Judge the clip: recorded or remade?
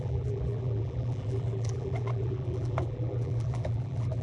remade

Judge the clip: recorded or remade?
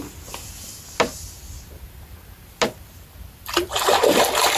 recorded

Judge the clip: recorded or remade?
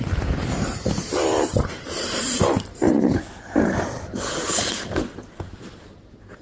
remade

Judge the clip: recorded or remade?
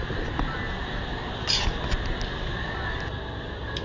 recorded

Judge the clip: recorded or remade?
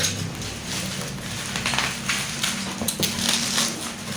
recorded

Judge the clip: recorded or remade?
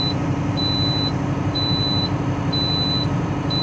remade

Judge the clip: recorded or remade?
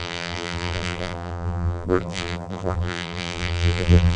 remade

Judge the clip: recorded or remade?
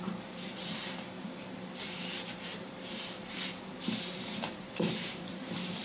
remade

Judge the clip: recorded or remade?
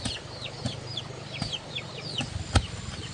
remade